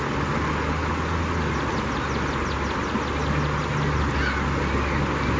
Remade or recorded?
recorded